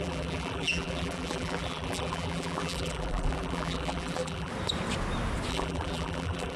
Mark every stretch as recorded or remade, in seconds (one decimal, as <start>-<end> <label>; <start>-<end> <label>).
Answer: 0.0-4.5 remade; 4.5-5.5 recorded; 5.5-6.6 remade